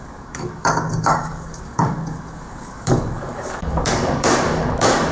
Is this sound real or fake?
fake